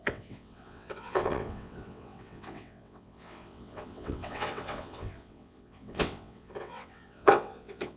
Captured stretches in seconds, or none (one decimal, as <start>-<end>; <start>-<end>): none